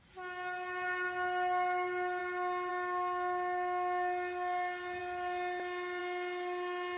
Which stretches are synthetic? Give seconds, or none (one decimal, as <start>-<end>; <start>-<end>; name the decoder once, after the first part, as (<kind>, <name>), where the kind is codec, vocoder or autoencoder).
none